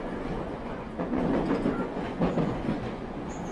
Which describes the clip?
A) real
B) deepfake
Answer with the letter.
B